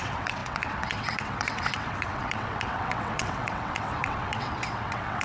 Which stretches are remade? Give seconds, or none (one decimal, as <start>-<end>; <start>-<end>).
0.0-5.2